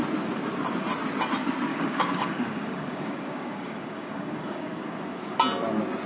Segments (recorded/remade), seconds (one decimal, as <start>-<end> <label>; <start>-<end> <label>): 0.0-1.7 recorded; 1.7-5.4 remade; 5.4-6.1 recorded